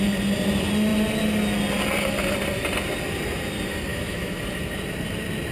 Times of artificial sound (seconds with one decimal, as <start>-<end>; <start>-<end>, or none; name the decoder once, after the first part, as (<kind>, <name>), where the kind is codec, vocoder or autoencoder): 3.9-4.4 (autoencoder, DAC-VAE)